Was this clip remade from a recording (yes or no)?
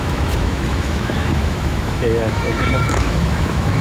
yes